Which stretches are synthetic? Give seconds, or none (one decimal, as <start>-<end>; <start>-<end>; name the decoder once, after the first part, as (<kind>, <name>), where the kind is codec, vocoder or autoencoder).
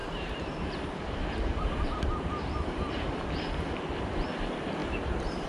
0.0-3.2 (vocoder, BigVGAN v2); 4.8-5.5